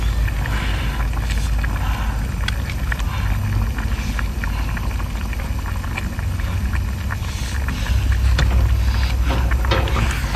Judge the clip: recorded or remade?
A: recorded